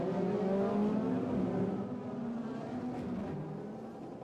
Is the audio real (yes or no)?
yes